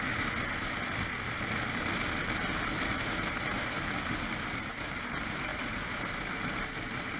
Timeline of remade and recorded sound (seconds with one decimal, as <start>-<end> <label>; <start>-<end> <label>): 0.0-7.2 recorded